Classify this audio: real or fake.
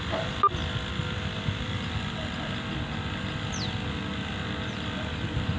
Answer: real